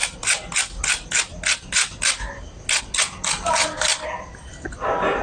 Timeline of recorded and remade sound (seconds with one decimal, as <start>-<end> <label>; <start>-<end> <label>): 0.0-5.2 recorded